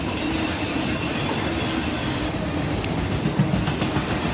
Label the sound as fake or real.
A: real